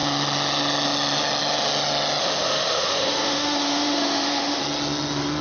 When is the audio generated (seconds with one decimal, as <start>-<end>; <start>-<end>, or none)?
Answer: 2.2-4.6